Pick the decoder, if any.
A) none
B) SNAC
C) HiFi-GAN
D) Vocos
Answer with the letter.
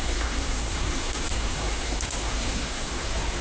B